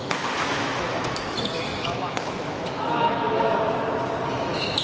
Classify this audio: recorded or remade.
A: remade